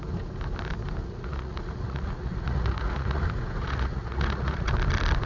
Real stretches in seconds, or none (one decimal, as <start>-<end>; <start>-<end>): 0.0-1.0; 3.2-3.6; 4.7-5.3